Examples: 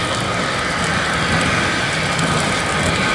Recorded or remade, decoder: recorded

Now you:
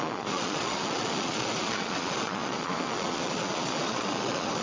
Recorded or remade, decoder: remade, vocoder, Vocos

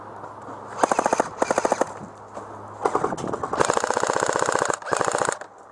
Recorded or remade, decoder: recorded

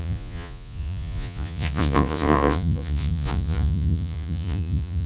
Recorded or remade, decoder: remade, vocoder, Vocos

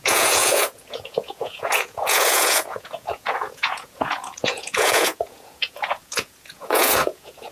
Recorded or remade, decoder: remade, vocoder, Vocos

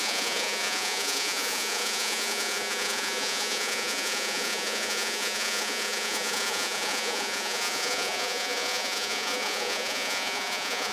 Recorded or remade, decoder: remade, vocoder, Vocos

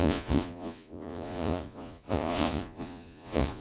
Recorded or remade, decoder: remade, vocoder, Vocos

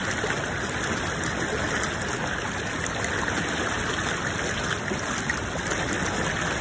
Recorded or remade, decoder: recorded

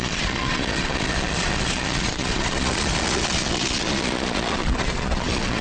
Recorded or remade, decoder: remade, vocoder, Vocos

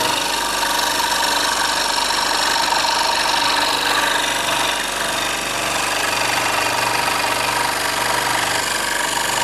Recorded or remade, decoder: recorded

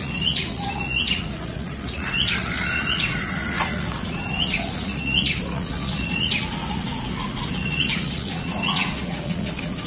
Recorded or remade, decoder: remade, vocoder, Vocos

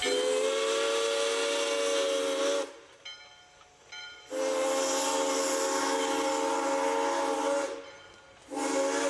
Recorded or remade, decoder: recorded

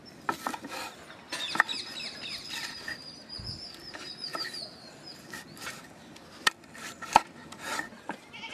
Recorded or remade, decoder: recorded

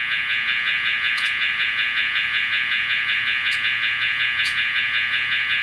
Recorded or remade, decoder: remade, vocoder, Vocos